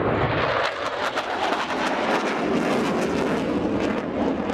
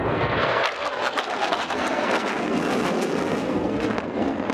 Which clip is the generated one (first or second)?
second